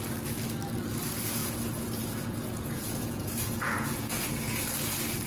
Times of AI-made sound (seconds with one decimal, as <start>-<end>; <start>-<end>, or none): 1.4-4.6